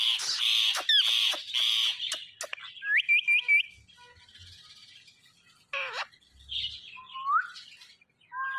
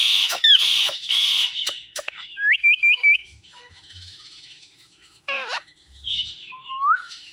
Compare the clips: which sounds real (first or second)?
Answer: first